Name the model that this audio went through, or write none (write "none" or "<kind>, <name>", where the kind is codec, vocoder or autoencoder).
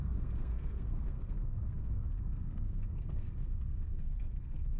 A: codec, SNAC